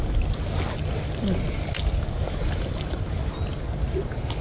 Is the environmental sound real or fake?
real